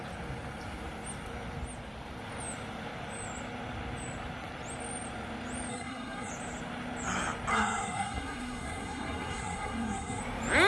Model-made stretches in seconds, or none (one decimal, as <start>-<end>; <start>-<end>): 5.7-6.3; 7.5-10.2